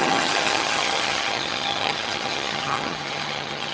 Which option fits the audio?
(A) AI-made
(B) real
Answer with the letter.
A